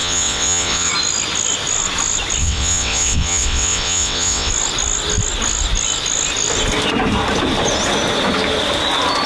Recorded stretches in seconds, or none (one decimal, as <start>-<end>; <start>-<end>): 0.9-2.4; 4.5-9.3